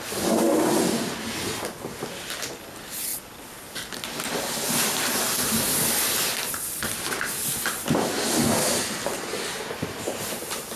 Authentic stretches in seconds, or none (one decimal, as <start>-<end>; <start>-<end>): 0.0-10.8